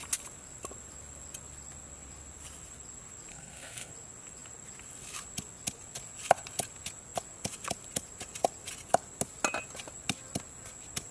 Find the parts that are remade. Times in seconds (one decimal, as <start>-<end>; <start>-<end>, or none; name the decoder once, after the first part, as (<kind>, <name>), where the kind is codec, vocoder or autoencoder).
3.3-3.9 (codec, SNAC)